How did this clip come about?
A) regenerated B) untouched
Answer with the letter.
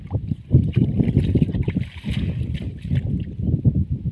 B